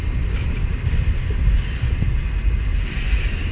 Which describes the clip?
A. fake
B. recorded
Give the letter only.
B